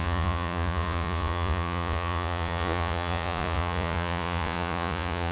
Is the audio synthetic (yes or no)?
yes